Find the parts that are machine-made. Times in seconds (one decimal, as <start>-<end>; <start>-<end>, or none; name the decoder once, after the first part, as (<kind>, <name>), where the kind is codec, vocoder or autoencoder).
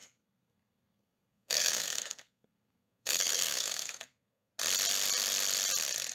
0.0-4.5 (codec, SNAC)